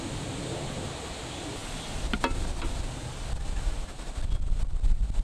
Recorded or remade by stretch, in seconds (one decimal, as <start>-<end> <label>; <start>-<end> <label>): 0.0-5.2 recorded